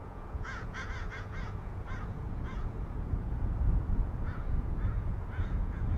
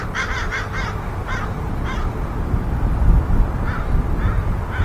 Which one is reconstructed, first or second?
first